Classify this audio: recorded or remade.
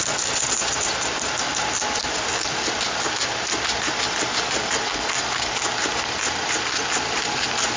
recorded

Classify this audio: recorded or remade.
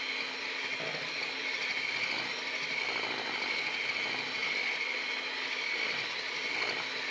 recorded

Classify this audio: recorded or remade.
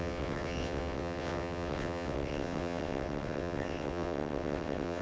remade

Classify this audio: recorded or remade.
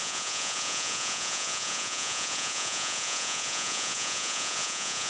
remade